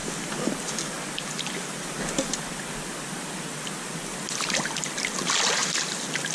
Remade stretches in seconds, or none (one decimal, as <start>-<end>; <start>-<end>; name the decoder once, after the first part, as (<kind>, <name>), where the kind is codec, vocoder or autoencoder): none